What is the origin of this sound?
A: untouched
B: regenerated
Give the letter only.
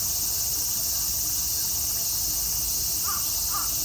A